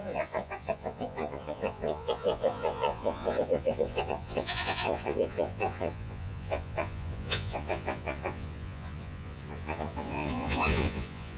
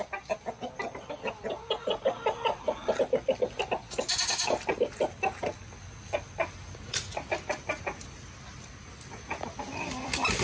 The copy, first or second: first